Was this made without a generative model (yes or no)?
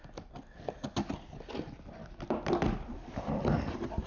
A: yes